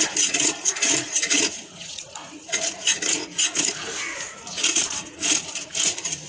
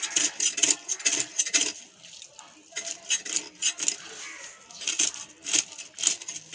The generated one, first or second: first